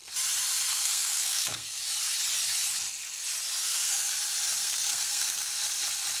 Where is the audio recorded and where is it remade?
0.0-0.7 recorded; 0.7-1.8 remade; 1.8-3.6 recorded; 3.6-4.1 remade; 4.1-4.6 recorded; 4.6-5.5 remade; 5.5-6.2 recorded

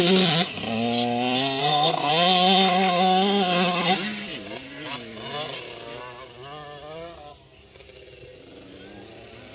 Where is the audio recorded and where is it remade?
0.0-1.6 recorded; 1.6-2.1 remade; 2.1-9.5 recorded

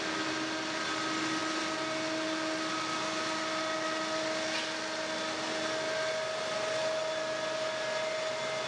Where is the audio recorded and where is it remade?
0.0-8.7 recorded

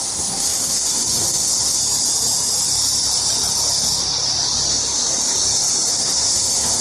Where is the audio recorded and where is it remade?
0.0-1.8 remade; 1.8-5.9 recorded; 5.9-6.8 remade

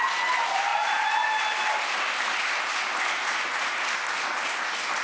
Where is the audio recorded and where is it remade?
0.0-5.0 recorded

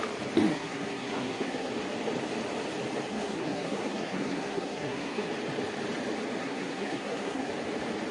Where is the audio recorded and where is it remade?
0.0-0.5 recorded; 0.5-1.7 remade; 1.7-3.1 recorded; 3.1-5.3 remade; 5.3-6.4 recorded; 6.4-7.5 remade; 7.5-8.1 recorded